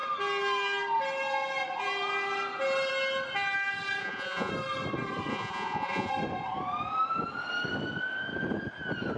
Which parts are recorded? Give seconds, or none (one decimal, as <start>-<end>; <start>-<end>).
0.0-4.0; 4.5-5.3; 6.1-9.2